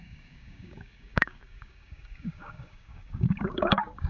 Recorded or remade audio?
remade